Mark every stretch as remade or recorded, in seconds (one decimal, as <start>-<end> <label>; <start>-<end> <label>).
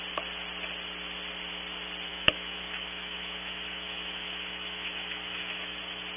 0.0-2.1 recorded; 2.1-5.8 remade; 5.8-6.2 recorded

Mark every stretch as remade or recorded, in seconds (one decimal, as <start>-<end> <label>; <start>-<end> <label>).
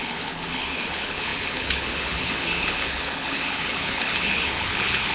0.0-5.1 remade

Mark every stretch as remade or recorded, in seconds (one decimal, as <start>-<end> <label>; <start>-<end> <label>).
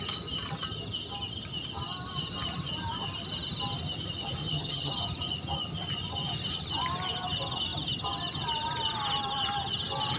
0.0-4.4 recorded; 4.4-4.9 remade; 4.9-10.2 recorded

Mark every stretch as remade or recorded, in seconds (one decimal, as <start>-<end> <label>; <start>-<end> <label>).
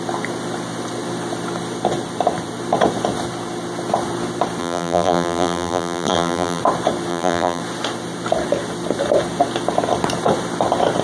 0.0-4.6 recorded; 4.6-6.6 remade; 6.6-7.1 recorded; 7.1-7.6 remade; 7.6-11.0 recorded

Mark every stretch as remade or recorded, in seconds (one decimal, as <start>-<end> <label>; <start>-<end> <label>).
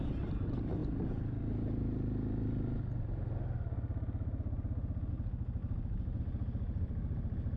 0.0-7.6 recorded